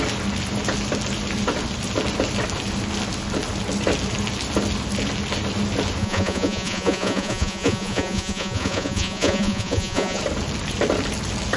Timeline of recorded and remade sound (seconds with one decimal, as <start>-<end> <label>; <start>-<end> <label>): 0.0-6.0 recorded; 6.0-10.2 remade; 10.2-11.6 recorded